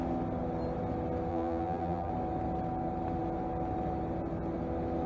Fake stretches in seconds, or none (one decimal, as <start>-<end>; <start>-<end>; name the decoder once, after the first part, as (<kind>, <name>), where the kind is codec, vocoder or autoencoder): 1.3-2.1 (vocoder, BigVGAN v2)